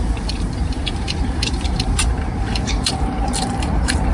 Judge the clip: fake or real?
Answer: fake